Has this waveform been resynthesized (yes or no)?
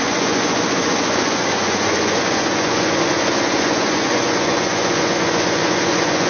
yes